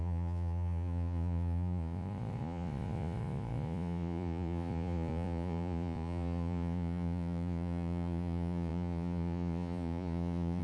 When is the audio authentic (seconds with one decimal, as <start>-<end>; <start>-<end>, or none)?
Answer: none